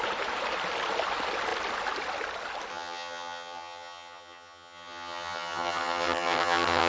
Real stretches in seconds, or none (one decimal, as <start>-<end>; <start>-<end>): 0.0-2.7